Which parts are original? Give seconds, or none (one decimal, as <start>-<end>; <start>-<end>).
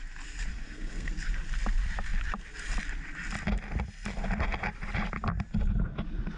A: 0.0-0.5; 1.1-6.4